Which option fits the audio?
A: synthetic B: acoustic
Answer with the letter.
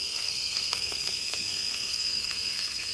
A